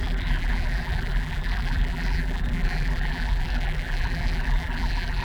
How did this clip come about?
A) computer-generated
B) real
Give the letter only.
A